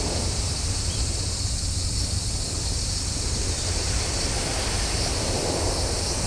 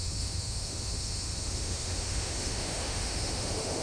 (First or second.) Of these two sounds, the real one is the first